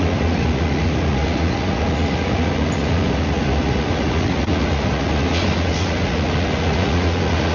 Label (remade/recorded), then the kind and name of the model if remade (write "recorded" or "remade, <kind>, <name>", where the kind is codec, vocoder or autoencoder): remade, vocoder, Vocos